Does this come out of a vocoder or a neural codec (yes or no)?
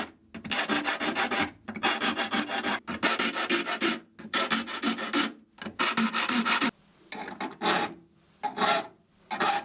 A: no